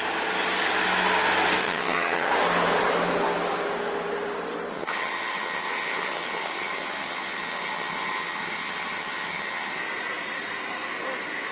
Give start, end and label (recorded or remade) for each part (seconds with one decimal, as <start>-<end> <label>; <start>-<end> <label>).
0.0-1.6 recorded; 1.6-2.3 remade; 2.3-4.7 recorded; 4.7-9.8 remade; 9.8-11.5 recorded